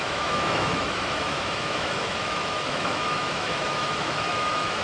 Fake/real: fake